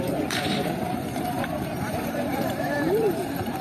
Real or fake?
fake